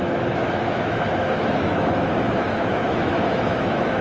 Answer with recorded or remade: remade